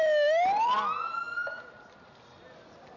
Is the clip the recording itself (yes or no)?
yes